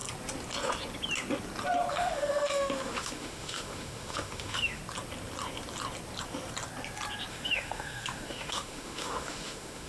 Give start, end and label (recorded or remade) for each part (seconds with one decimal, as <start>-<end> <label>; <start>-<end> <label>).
0.0-1.9 recorded; 1.9-4.8 remade; 4.8-7.3 recorded; 7.3-9.9 remade

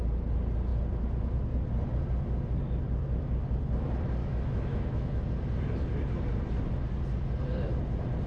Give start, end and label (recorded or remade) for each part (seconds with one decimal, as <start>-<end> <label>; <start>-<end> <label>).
0.0-4.2 recorded; 4.2-5.2 remade; 5.2-8.3 recorded

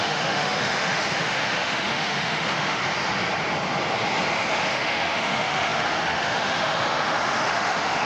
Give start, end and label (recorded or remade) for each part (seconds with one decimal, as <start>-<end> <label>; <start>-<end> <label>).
0.0-2.8 remade; 2.8-4.5 recorded; 4.5-8.1 remade

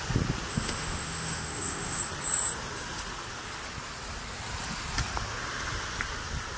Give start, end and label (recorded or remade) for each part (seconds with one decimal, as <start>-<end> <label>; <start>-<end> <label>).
0.0-0.5 recorded; 0.5-2.0 remade; 2.0-6.6 recorded